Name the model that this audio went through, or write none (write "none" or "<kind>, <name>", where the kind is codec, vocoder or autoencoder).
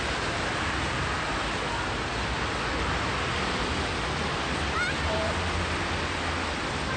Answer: none